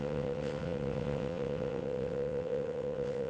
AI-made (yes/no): yes